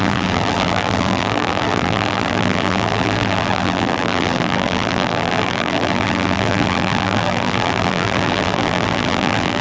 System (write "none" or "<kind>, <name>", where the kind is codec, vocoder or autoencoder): vocoder, BigVGAN v2